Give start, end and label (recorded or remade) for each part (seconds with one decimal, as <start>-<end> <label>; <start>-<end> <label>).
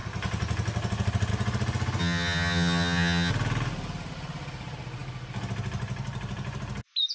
0.0-2.0 recorded; 2.0-3.3 remade; 3.3-7.1 recorded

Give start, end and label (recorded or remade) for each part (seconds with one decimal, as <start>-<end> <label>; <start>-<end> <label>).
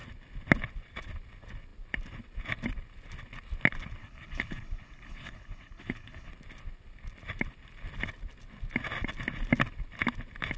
0.0-4.0 recorded; 4.0-6.3 remade; 6.3-10.6 recorded